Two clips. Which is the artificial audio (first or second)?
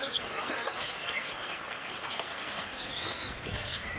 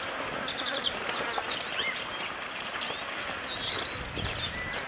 first